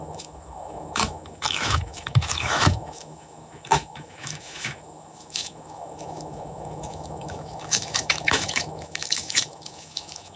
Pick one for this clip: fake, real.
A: fake